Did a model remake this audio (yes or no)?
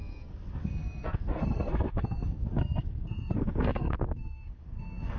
yes